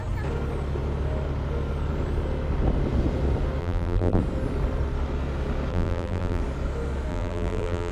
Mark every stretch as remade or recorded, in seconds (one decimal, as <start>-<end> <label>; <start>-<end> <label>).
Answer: 0.0-3.6 recorded; 3.6-4.2 remade; 4.2-5.7 recorded; 5.7-6.4 remade; 6.4-7.1 recorded; 7.1-7.9 remade

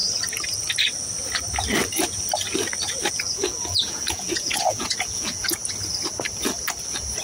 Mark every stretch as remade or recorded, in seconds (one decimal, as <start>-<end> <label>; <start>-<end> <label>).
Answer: 0.0-3.1 recorded; 3.1-5.6 remade; 5.6-7.2 recorded

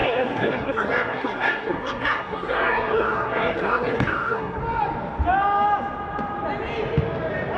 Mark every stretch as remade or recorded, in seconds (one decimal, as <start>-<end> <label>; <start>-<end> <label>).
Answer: 0.0-4.6 remade; 4.6-7.6 recorded

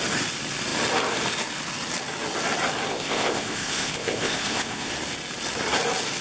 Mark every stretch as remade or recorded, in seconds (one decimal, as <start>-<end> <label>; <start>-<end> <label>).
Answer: 0.0-2.9 recorded; 2.9-4.9 remade; 4.9-6.2 recorded

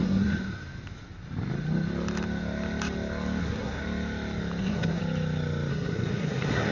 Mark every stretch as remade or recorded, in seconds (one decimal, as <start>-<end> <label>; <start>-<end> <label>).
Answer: 0.0-0.4 remade; 0.4-3.4 recorded; 3.4-3.8 remade; 3.8-4.6 recorded; 4.6-5.0 remade; 5.0-5.7 recorded; 5.7-6.7 remade

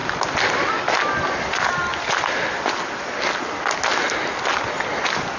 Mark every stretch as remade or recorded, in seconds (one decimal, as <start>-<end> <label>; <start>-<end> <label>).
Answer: 0.0-5.4 recorded